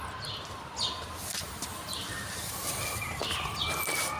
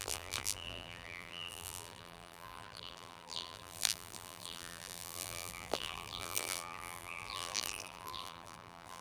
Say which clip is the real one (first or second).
first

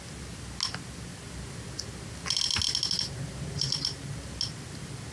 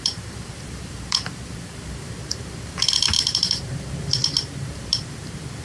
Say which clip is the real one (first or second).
first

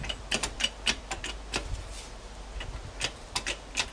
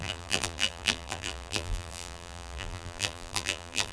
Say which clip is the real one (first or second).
first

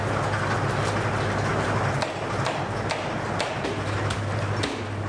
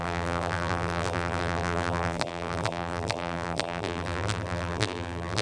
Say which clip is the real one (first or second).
first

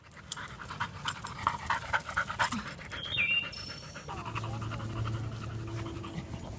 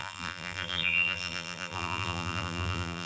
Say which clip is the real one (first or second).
first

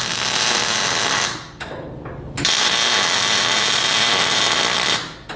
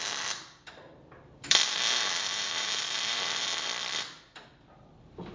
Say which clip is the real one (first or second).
first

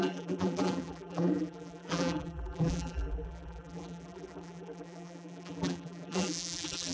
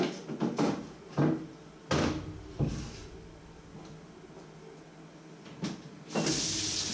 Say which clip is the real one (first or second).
second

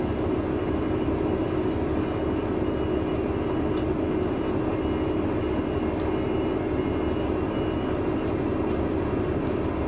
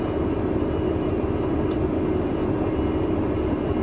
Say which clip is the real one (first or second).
first